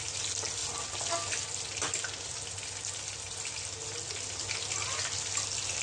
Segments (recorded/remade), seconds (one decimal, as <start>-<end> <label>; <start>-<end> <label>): 0.0-5.8 recorded